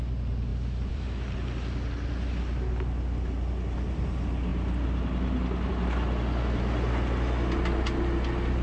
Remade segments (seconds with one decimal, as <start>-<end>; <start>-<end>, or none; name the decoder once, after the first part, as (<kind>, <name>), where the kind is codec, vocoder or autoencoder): 0.5-2.1 (vocoder, BigVGAN v2)